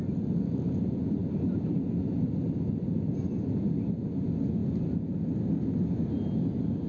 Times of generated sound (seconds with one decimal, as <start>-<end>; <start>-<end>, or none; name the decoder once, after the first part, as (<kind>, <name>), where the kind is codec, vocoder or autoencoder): none